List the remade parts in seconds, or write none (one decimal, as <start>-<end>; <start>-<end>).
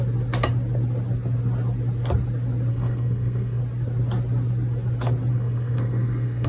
2.7-3.6; 5.3-6.5